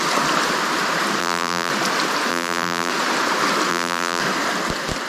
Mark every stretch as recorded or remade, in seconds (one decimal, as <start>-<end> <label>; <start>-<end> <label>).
0.0-1.2 recorded; 1.2-1.7 remade; 1.7-2.3 recorded; 2.3-2.9 remade; 2.9-3.7 recorded; 3.7-4.2 remade; 4.2-5.1 recorded